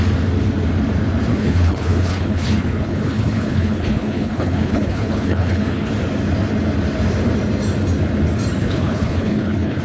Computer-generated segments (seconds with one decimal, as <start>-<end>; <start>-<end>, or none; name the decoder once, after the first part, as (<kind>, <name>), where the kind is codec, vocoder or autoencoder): 1.3-5.9 (codec, HILCodec); 8.6-9.8